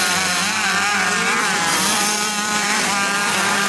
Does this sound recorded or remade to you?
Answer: remade